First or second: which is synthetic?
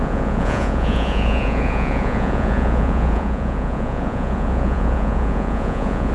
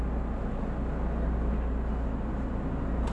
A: first